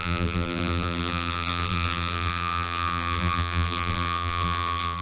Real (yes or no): no